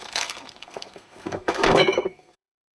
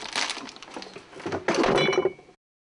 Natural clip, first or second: second